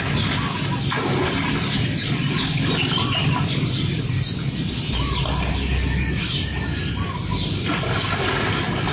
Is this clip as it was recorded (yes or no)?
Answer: yes